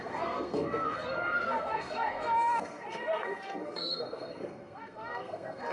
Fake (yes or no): yes